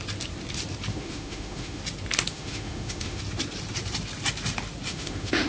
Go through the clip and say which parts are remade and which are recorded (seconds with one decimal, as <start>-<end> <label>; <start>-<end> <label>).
0.0-0.9 recorded; 0.9-1.8 remade; 1.8-2.3 recorded; 2.3-3.2 remade; 3.2-4.9 recorded; 4.9-5.5 remade